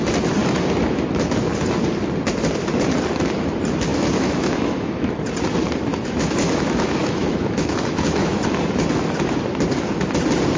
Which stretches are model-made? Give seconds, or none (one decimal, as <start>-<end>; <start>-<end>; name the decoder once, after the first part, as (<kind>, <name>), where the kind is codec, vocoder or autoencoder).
3.9-5.1 (autoencoder, DAC-VAE); 5.9-8.4